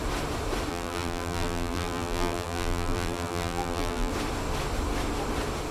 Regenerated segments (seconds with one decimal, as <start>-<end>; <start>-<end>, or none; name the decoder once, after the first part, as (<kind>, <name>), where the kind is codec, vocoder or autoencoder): 0.7-4.1 (vocoder, BigVGAN v2)